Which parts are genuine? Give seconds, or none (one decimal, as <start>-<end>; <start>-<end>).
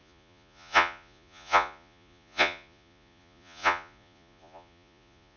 none